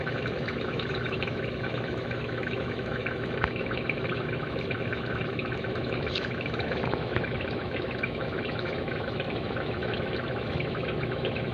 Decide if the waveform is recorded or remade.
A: remade